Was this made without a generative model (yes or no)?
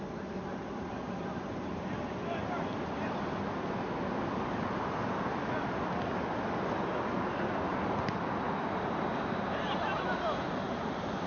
yes